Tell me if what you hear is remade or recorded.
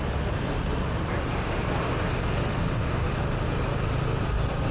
recorded